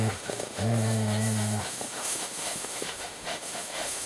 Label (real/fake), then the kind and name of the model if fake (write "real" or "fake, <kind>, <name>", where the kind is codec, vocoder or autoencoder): fake, autoencoder, DAC-VAE